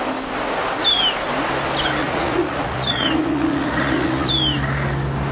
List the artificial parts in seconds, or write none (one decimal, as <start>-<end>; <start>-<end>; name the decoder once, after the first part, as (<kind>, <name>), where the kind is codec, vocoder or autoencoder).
2.0-4.3 (vocoder, Vocos)